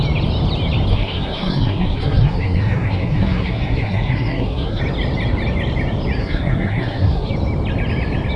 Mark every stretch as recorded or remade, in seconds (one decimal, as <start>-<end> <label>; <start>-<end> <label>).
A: 0.0-0.9 recorded; 0.9-4.8 remade; 4.8-6.2 recorded; 6.2-7.3 remade; 7.3-8.4 recorded